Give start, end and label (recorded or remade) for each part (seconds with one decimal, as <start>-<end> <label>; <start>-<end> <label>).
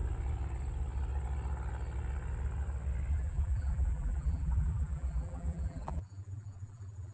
0.0-3.1 recorded; 3.1-7.1 remade